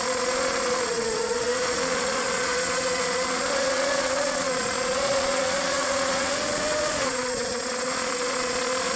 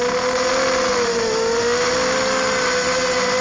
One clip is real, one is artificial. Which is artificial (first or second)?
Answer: first